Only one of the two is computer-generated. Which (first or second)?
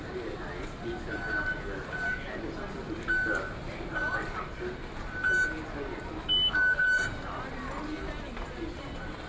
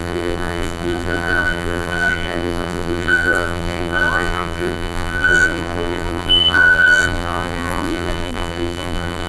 second